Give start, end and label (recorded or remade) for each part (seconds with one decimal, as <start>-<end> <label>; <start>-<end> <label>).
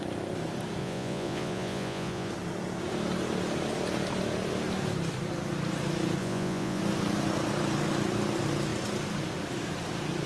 0.0-0.8 recorded; 0.8-2.3 remade; 2.3-6.2 recorded; 6.2-6.8 remade; 6.8-10.3 recorded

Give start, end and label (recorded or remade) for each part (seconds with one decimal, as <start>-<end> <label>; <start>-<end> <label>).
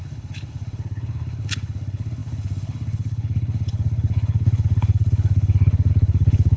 0.0-6.6 remade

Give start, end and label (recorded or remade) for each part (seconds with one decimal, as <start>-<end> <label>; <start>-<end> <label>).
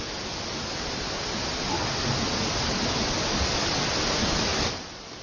0.0-4.5 recorded; 4.5-5.2 remade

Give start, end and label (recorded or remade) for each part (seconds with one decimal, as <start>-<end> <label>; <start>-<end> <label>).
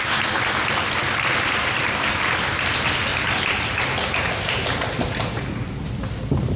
0.0-3.1 remade; 3.1-5.4 recorded; 5.4-6.6 remade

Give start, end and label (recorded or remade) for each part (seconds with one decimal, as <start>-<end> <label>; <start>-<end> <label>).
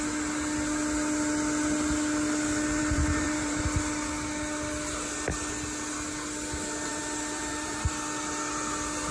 0.0-2.8 recorded; 2.8-3.6 remade; 3.6-6.9 recorded; 6.9-7.9 remade; 7.9-9.1 recorded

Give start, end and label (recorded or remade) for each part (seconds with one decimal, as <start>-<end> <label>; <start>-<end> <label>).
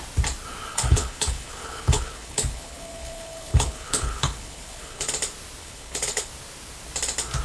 0.0-0.7 recorded; 0.7-5.1 remade; 5.1-5.6 recorded; 5.6-6.3 remade; 6.3-7.4 recorded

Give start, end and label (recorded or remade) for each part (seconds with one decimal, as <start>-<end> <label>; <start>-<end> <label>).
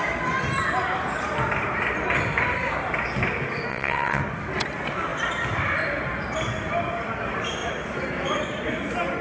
0.0-3.7 recorded; 3.7-4.2 remade; 4.2-9.2 recorded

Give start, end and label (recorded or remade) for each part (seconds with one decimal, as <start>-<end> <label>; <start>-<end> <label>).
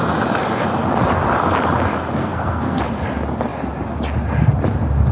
0.0-2.2 recorded; 2.2-2.8 remade; 2.8-5.1 recorded